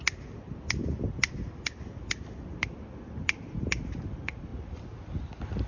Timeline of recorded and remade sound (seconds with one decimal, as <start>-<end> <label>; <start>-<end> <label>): 0.0-5.7 recorded